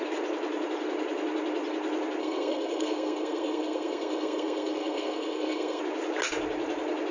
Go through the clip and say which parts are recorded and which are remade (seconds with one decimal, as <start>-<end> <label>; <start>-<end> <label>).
0.0-2.2 recorded; 2.2-5.8 remade; 5.8-7.1 recorded